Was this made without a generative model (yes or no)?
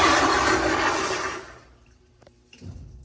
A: no